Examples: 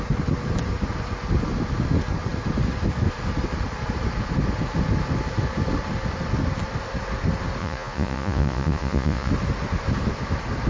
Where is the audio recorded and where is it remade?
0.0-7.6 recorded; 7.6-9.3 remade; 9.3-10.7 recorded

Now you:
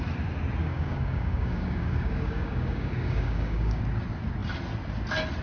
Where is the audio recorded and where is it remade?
0.0-0.6 recorded; 0.6-3.8 remade; 3.8-5.4 recorded

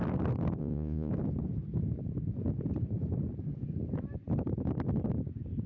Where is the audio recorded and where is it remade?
0.0-0.6 recorded; 0.6-1.1 remade; 1.1-5.7 recorded

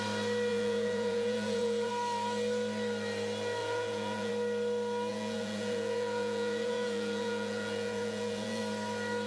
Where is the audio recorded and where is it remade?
0.0-0.5 recorded; 0.5-1.9 remade; 1.9-3.6 recorded; 3.6-4.3 remade; 4.3-5.1 recorded; 5.1-8.6 remade; 8.6-9.3 recorded

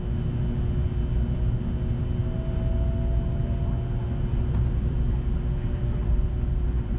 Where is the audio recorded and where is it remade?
0.0-4.3 recorded; 4.3-5.0 remade; 5.0-6.0 recorded; 6.0-7.0 remade

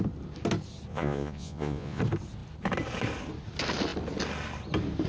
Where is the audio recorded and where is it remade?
0.0-0.9 recorded; 0.9-2.0 remade; 2.0-5.1 recorded

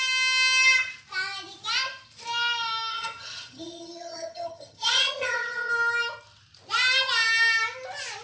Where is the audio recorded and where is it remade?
0.0-2.9 recorded; 2.9-5.7 remade; 5.7-8.2 recorded

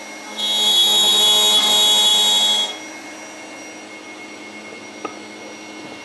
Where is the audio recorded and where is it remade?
0.0-0.7 recorded; 0.7-1.2 remade; 1.2-6.0 recorded